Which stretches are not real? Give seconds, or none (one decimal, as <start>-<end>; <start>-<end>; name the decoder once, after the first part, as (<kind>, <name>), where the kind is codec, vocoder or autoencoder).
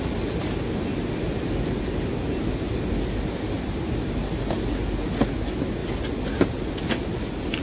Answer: none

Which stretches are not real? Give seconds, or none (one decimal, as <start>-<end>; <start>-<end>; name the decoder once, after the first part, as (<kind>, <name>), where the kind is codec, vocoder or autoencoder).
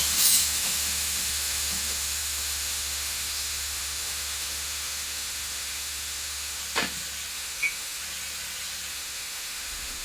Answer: 0.0-6.6 (autoencoder, DAC-VAE); 7.3-8.0; 8.9-10.0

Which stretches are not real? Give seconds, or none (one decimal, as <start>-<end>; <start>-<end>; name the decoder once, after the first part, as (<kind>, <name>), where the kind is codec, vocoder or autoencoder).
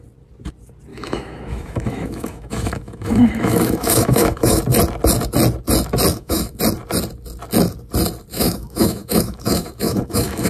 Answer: 0.9-4.6 (autoencoder, DAC-VAE); 6.1-6.6; 8.3-10.5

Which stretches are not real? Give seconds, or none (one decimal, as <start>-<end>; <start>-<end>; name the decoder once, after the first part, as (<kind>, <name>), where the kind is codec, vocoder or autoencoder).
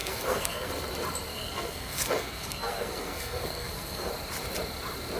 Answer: 0.0-0.7 (codec, SNAC); 1.3-4.1